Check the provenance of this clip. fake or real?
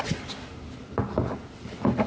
real